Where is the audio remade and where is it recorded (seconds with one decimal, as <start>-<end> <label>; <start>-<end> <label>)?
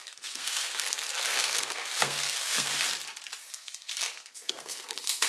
0.0-2.7 remade; 2.7-3.5 recorded; 3.5-5.3 remade